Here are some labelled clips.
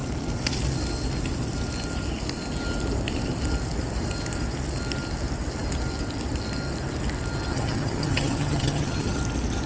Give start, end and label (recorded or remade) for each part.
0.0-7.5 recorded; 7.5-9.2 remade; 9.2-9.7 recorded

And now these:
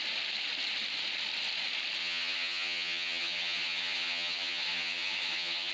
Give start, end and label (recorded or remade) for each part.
0.0-2.0 recorded; 2.0-5.7 remade

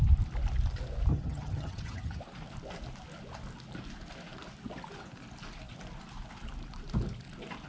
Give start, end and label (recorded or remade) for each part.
0.0-1.1 recorded; 1.1-2.2 remade; 2.2-7.7 recorded

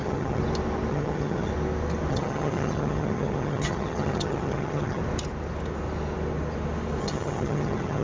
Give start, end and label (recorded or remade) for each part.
0.0-0.4 remade; 0.4-0.9 recorded; 0.9-1.5 remade; 1.5-2.1 recorded; 2.1-5.0 remade; 5.0-7.0 recorded; 7.0-8.0 remade

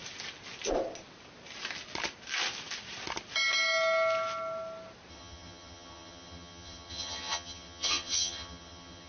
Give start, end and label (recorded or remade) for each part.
0.0-5.1 recorded; 5.1-9.1 remade

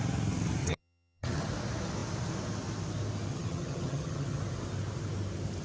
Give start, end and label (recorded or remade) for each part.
0.0-0.6 recorded; 0.6-1.5 remade; 1.5-3.3 recorded; 3.3-4.4 remade; 4.4-5.6 recorded

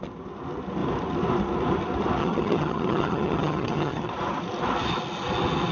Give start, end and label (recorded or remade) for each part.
0.0-2.2 recorded; 2.2-4.1 remade; 4.1-5.7 recorded